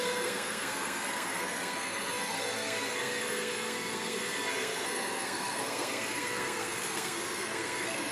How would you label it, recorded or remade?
remade